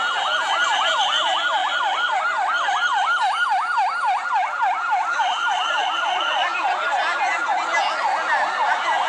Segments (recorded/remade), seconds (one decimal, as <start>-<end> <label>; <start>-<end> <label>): 0.0-9.1 recorded